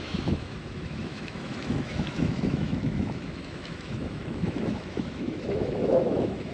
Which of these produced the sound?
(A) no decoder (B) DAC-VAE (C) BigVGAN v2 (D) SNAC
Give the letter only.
B